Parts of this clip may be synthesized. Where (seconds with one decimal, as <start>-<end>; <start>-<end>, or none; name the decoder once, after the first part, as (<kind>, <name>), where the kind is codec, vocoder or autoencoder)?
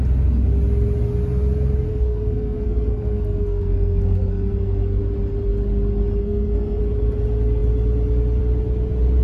1.9-5.0 (codec, SNAC); 6.2-6.8